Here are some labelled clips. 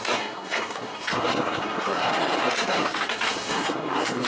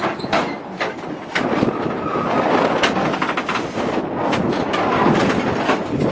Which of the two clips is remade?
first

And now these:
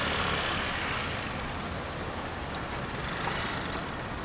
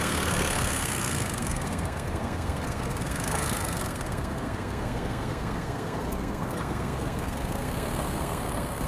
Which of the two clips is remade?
second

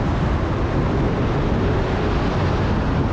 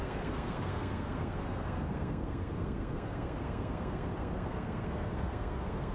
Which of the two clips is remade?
second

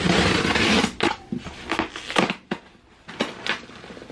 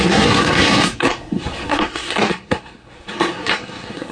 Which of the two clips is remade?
second